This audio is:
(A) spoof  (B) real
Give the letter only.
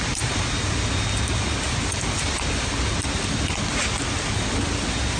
B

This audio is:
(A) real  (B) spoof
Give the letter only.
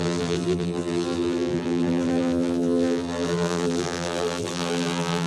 B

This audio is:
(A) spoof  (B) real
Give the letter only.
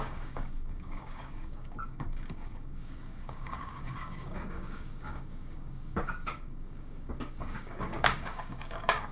A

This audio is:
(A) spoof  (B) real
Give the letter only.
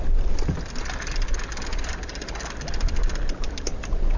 B